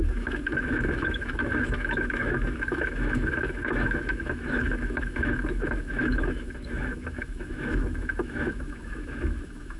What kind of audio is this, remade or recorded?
remade